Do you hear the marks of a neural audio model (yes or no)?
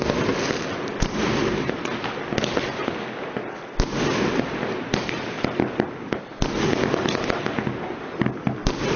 no